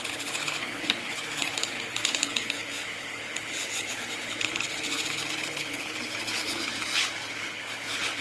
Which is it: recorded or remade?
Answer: remade